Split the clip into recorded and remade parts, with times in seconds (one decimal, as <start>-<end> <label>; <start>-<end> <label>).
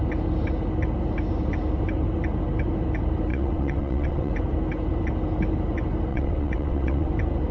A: 0.0-3.3 recorded; 3.3-4.3 remade; 4.3-6.1 recorded; 6.1-7.1 remade; 7.1-7.5 recorded